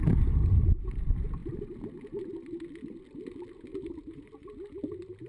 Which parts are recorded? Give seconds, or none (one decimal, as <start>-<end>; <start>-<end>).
0.0-3.7; 4.3-5.3